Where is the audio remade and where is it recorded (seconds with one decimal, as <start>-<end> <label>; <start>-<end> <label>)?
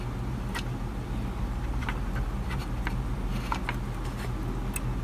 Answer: 0.0-0.9 recorded; 0.9-3.3 remade; 3.3-5.0 recorded